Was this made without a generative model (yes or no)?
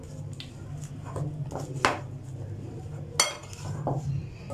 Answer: yes